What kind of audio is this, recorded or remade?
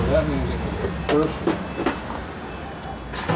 recorded